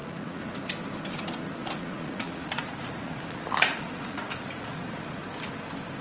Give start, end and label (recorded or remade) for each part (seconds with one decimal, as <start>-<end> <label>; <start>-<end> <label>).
0.0-0.5 remade; 0.5-1.6 recorded; 1.6-5.2 remade; 5.2-6.0 recorded

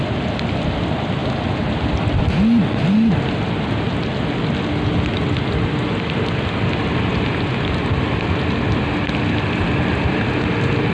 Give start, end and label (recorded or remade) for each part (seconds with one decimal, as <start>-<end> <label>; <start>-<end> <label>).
0.0-10.9 recorded